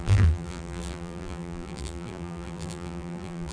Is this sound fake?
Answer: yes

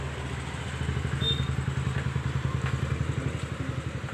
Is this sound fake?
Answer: no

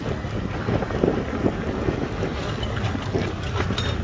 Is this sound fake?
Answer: no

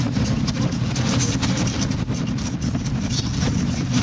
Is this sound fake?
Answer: no